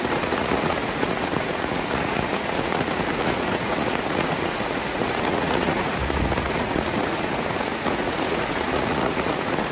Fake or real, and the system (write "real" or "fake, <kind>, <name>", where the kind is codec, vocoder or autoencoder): fake, vocoder, Vocos